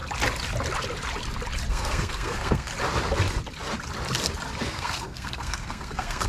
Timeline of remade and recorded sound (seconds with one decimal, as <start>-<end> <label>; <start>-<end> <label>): 0.0-1.7 recorded; 1.7-2.7 remade; 2.7-4.6 recorded; 4.6-6.3 remade